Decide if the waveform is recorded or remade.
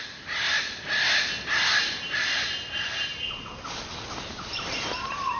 recorded